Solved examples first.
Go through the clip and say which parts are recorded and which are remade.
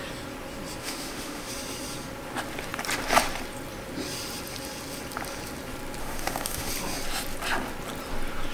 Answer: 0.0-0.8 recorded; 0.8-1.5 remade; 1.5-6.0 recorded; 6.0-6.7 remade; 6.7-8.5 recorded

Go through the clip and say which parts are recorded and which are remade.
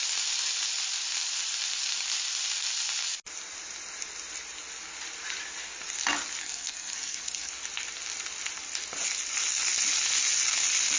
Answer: 0.0-6.4 recorded; 6.4-7.5 remade; 7.5-11.0 recorded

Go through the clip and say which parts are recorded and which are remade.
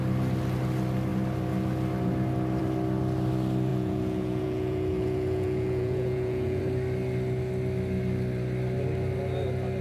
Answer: 0.0-3.7 recorded; 3.7-6.6 remade; 6.6-9.8 recorded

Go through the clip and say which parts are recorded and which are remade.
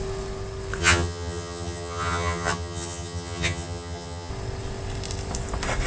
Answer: 0.0-0.8 recorded; 0.8-4.3 remade; 4.3-5.9 recorded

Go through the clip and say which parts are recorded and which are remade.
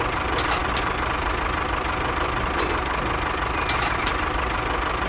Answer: 0.0-5.1 recorded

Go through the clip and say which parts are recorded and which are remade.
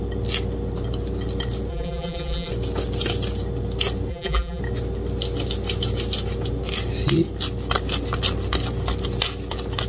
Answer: 0.0-1.7 recorded; 1.7-2.5 remade; 2.5-4.1 recorded; 4.1-4.6 remade; 4.6-9.9 recorded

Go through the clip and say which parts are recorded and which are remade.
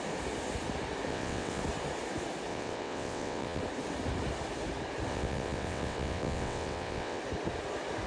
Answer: 0.0-1.1 recorded; 1.1-1.6 remade; 1.6-2.5 recorded; 2.5-3.6 remade; 3.6-5.1 recorded; 5.1-7.2 remade; 7.2-8.1 recorded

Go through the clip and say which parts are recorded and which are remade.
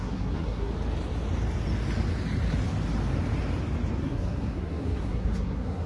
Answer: 0.0-0.7 remade; 0.7-4.0 recorded; 4.0-5.9 remade